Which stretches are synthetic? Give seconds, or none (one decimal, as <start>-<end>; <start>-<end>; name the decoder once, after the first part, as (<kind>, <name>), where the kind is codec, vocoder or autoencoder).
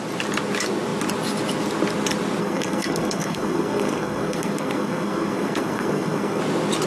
2.4-6.4 (codec, SNAC)